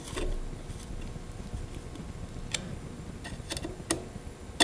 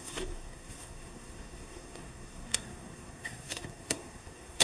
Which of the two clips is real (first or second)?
first